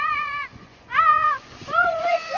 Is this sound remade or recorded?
remade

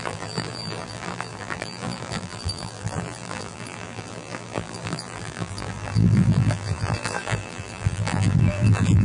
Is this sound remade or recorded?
remade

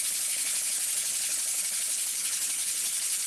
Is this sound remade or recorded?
remade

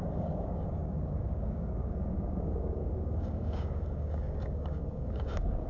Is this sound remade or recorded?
remade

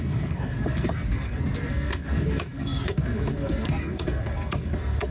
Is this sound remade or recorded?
remade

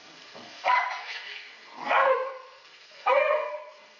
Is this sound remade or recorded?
remade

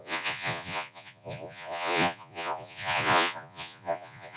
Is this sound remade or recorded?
remade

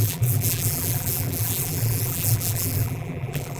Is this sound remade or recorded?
remade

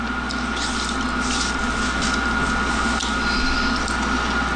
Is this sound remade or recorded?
recorded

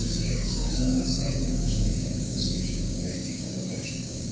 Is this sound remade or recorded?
remade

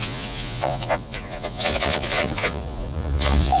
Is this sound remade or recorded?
remade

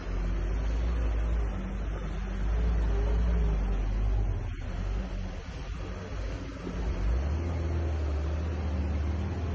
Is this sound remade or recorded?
recorded